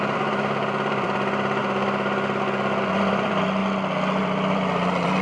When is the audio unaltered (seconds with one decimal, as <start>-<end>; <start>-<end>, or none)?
1.6-2.9; 3.6-4.2